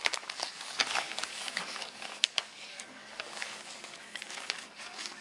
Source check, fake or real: fake